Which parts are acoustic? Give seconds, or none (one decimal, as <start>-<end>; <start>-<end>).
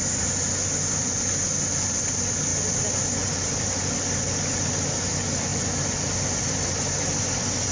0.0-7.7